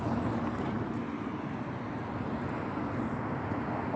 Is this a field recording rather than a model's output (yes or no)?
yes